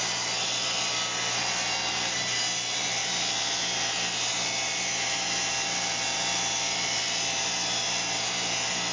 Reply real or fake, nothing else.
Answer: real